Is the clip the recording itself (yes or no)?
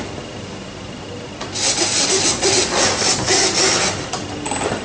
yes